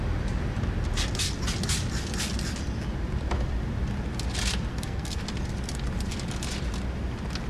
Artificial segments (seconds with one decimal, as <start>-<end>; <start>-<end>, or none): 4.7-5.2